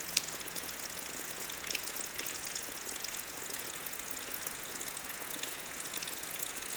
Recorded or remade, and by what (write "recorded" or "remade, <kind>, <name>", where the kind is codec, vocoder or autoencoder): remade, vocoder, Vocos